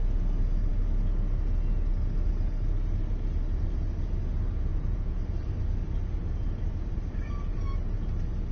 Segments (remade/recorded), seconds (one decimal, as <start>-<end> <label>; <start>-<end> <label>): 0.0-4.7 recorded; 4.7-5.2 remade; 5.2-8.5 recorded

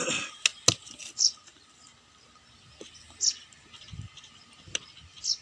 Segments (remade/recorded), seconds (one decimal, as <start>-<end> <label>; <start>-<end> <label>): 0.0-5.4 recorded

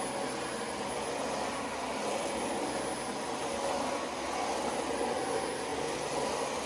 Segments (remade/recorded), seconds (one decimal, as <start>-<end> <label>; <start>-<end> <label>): 0.0-6.7 recorded